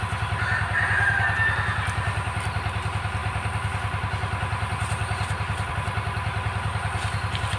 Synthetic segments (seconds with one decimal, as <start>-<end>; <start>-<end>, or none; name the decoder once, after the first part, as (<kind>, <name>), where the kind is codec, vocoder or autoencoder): none